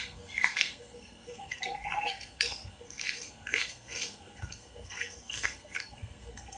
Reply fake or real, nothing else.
fake